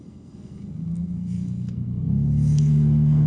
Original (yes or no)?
no